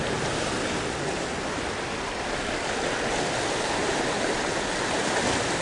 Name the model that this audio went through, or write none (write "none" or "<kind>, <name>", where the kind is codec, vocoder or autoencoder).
none